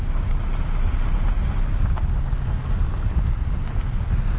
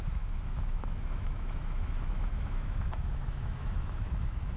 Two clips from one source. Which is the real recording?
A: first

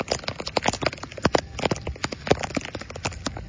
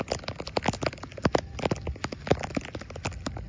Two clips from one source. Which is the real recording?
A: second